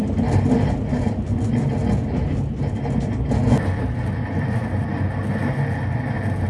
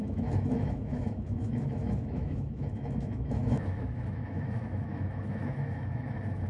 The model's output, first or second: second